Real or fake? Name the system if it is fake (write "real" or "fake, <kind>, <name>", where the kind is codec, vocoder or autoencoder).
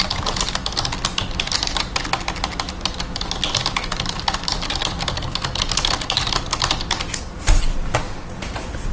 real